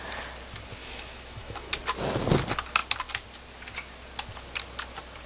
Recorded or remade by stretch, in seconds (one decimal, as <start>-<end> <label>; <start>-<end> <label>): 0.0-0.8 recorded; 0.8-1.7 remade; 1.7-5.3 recorded